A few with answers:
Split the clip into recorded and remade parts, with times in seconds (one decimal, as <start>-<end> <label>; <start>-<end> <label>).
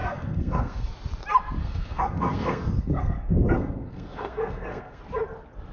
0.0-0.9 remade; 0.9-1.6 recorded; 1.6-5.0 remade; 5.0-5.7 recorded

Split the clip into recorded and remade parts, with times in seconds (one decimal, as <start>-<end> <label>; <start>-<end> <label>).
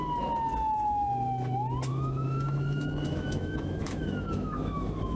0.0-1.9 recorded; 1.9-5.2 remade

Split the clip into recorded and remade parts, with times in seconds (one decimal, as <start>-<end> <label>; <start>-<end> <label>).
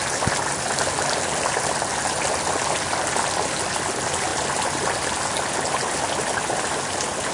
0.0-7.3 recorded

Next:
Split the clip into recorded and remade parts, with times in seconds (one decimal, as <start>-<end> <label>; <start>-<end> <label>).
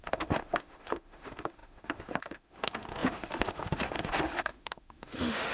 0.0-5.5 remade